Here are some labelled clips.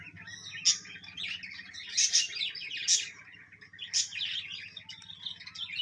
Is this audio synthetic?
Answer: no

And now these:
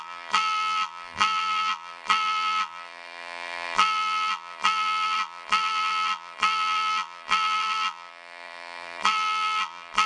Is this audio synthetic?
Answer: yes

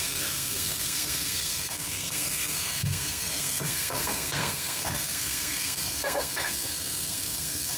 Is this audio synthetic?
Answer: yes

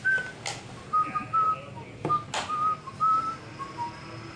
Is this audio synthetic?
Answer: no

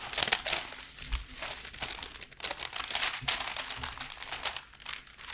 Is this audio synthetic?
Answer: no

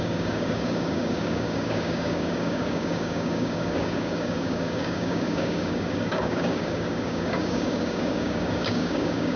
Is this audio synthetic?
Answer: yes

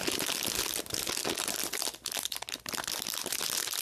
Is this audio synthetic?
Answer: no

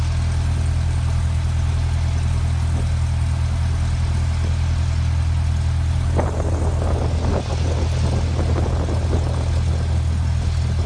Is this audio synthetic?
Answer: no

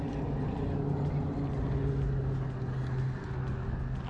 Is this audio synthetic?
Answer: no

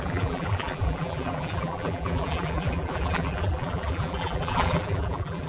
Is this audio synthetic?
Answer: yes